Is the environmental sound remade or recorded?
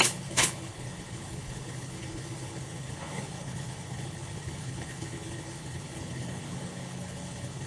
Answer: remade